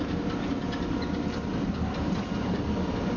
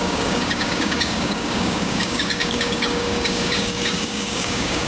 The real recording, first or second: first